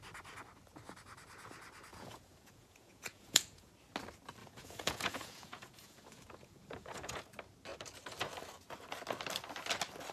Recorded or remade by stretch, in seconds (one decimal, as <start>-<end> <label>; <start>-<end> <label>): 0.0-1.9 recorded; 1.9-3.7 remade; 3.7-4.4 recorded; 4.4-7.2 remade; 7.2-10.1 recorded